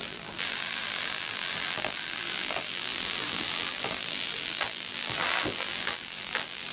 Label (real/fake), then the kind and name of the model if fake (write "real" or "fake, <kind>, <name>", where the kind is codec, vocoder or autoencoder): fake, vocoder, BigVGAN v2